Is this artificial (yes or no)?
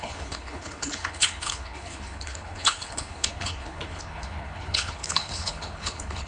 yes